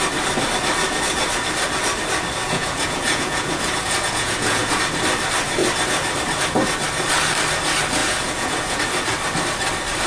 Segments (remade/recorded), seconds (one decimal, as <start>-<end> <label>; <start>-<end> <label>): 0.0-2.4 recorded; 2.4-4.8 remade; 4.8-8.0 recorded; 8.0-8.8 remade; 8.8-10.1 recorded